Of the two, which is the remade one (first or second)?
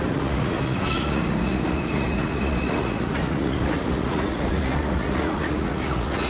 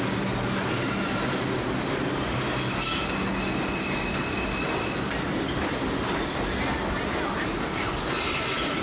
first